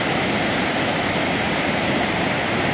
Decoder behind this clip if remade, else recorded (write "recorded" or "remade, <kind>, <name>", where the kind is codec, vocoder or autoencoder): recorded